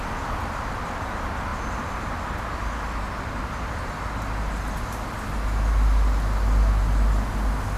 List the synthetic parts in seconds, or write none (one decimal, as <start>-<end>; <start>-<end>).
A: none